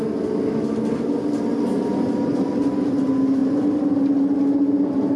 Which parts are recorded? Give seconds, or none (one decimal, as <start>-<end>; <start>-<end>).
0.0-5.2